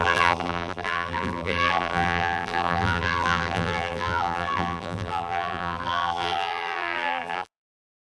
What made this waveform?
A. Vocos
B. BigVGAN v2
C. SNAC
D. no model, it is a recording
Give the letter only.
B